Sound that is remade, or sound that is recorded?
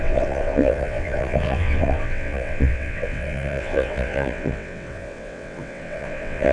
remade